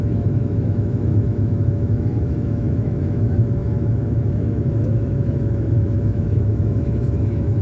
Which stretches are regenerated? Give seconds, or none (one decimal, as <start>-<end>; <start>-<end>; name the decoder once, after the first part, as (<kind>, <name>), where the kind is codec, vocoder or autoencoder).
0.0-7.6 (autoencoder, DAC-VAE)